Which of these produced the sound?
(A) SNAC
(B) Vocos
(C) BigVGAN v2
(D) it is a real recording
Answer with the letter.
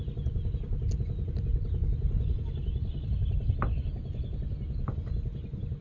D